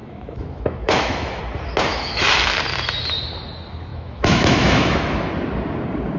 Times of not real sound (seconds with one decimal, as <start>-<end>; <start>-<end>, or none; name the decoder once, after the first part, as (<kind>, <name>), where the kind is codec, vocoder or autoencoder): 0.0-1.4 (autoencoder, DAC-VAE); 1.9-2.6; 3.9-5.3